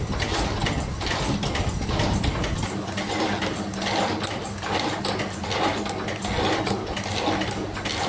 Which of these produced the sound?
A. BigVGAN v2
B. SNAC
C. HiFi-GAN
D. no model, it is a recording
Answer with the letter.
D